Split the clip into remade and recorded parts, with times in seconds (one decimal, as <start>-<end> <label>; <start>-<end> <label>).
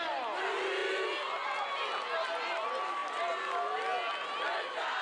0.0-5.0 recorded